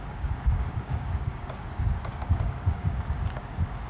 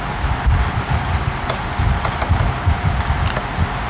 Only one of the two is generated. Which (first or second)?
first